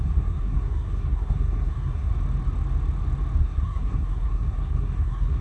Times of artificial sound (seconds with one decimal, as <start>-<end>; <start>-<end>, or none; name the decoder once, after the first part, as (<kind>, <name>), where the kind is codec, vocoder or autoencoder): 0.0-2.1 (codec, SNAC); 3.4-5.4